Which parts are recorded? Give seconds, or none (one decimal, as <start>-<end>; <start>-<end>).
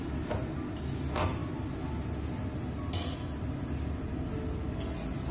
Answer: 0.0-5.3